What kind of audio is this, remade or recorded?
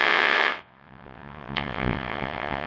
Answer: remade